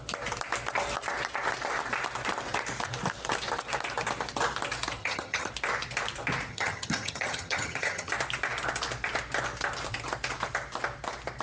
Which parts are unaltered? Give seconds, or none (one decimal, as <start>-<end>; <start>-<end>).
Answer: 0.0-5.0; 5.5-6.5; 8.1-11.4